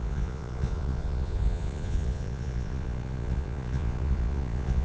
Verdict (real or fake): fake